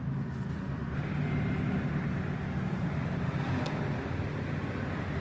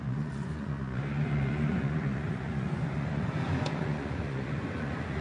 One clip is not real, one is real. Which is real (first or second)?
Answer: first